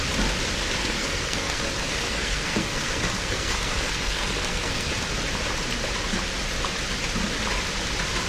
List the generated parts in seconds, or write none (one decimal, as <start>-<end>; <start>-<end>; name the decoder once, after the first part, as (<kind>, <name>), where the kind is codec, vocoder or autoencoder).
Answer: 0.8-4.9 (codec, SNAC)